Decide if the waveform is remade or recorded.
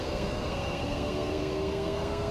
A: remade